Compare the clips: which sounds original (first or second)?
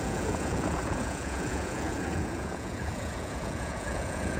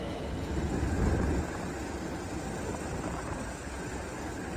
second